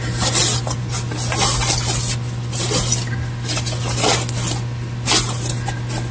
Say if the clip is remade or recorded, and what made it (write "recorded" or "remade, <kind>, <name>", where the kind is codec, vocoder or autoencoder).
recorded